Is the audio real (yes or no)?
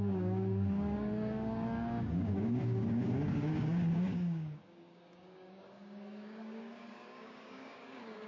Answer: no